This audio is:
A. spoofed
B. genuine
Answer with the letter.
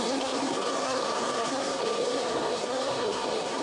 A